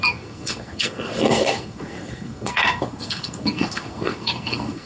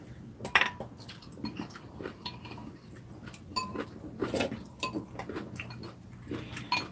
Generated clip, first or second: first